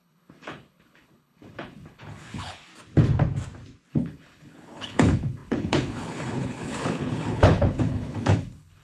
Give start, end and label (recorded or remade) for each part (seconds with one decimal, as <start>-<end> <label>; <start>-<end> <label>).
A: 0.0-2.7 remade; 2.7-3.9 recorded; 3.9-8.8 remade